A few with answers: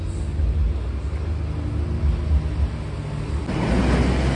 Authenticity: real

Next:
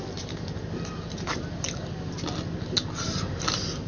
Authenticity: real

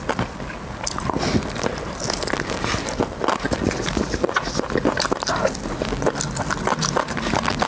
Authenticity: real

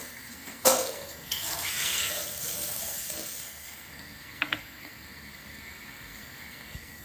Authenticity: fake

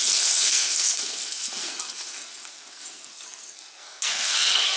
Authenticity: fake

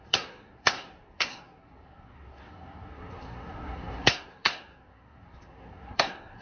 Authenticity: fake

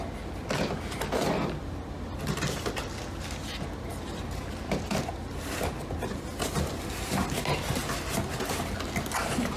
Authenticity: real